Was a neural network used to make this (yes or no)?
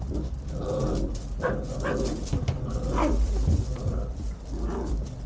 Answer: yes